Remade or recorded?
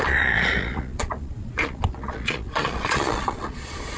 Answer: remade